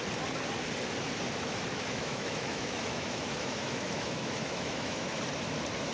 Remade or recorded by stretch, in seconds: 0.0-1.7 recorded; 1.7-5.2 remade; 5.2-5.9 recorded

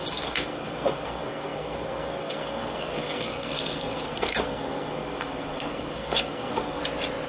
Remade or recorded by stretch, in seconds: 0.0-6.8 remade; 6.8-7.3 recorded

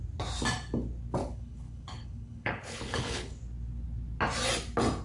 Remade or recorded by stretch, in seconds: 0.0-1.2 recorded; 1.2-3.4 remade; 3.4-5.0 recorded

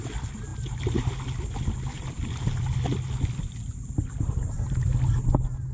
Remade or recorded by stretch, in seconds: 0.0-5.7 recorded